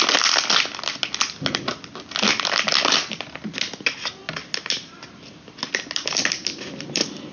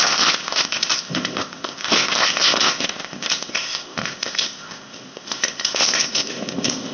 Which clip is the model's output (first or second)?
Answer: second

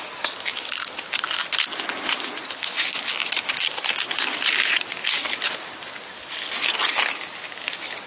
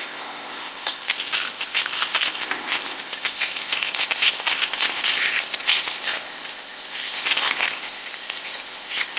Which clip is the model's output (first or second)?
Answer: second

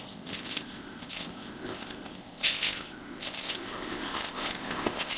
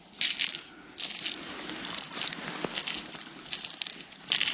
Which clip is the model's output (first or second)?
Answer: first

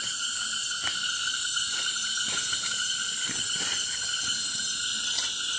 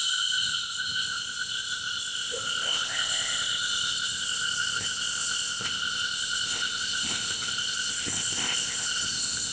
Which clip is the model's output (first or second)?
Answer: second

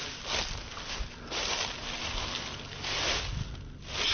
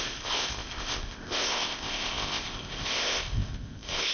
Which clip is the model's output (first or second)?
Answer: second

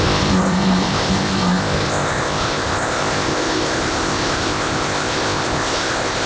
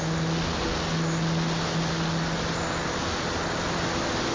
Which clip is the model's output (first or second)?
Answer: first